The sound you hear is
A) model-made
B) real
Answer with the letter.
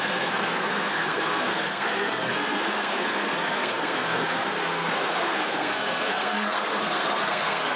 A